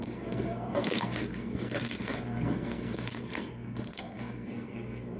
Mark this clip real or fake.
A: fake